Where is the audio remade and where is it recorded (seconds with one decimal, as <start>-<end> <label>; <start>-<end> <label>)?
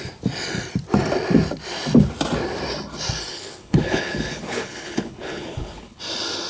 0.0-3.3 recorded; 3.3-6.0 remade; 6.0-6.5 recorded